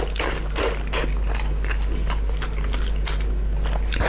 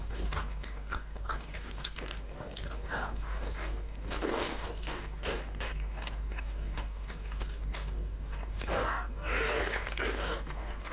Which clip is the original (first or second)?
first